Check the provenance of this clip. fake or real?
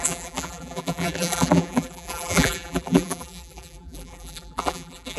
fake